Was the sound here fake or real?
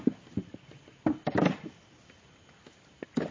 real